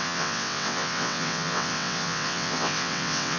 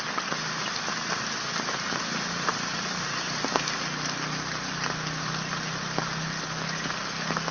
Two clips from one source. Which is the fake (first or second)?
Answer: first